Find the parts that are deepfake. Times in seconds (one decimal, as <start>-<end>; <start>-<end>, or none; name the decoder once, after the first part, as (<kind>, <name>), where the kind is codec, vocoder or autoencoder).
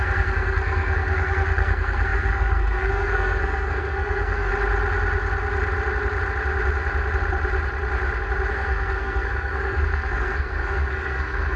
0.0-4.5 (codec, SNAC); 8.5-11.6